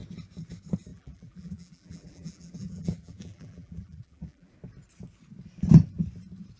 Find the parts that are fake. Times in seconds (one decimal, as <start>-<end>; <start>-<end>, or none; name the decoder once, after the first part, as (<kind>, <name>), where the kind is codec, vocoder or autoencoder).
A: 0.9-4.5 (vocoder, BigVGAN v2)

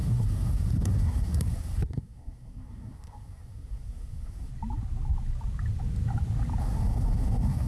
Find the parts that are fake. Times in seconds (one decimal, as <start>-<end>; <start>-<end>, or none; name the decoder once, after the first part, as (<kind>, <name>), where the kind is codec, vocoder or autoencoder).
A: 0.0-4.5 (codec, SNAC); 6.6-7.7

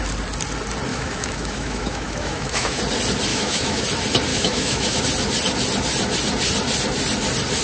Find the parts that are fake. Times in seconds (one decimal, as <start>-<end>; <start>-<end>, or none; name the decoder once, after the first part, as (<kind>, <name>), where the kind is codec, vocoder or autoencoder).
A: 0.9-2.8 (autoencoder, DAC-VAE); 3.3-3.8; 4.3-5.0

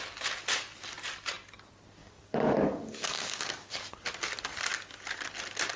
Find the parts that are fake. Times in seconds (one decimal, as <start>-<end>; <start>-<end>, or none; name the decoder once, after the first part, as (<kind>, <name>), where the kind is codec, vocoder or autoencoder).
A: 2.0-3.9 (codec, DAC)

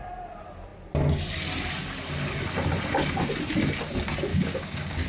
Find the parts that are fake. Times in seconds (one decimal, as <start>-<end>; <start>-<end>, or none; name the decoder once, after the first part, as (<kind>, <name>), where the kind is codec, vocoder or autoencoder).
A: 4.3-5.1 (codec, DAC)

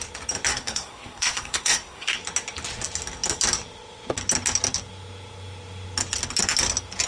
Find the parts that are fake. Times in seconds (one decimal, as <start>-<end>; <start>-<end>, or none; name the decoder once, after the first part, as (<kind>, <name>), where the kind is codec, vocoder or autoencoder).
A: 0.5-2.2 (codec, SNAC)

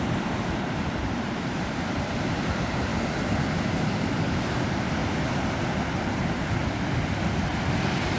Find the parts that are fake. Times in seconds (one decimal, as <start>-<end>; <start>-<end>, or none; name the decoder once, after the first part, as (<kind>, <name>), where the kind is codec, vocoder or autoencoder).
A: 0.0-2.9 (vocoder, BigVGAN v2); 4.4-5.0; 5.8-6.6; 7.5-8.2